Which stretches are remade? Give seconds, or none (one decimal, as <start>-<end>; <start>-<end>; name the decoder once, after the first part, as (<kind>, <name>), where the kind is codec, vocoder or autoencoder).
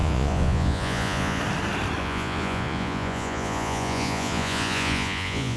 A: 0.0-1.4 (vocoder, Vocos); 2.0-5.6